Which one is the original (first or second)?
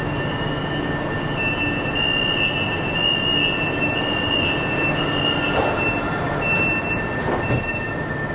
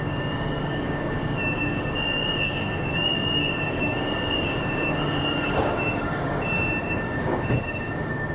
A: first